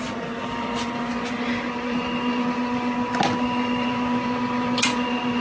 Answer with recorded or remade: recorded